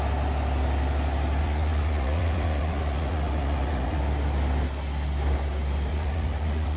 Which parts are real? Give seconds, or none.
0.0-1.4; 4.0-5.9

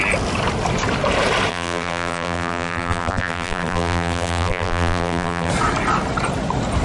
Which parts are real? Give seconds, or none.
0.0-1.5; 5.5-6.8

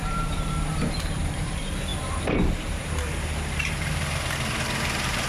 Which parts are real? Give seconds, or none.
none

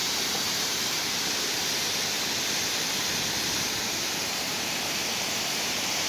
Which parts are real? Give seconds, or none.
none

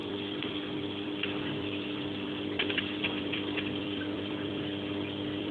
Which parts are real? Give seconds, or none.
none

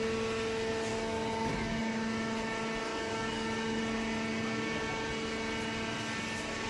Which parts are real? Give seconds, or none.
0.0-0.9; 1.8-2.9; 3.8-6.7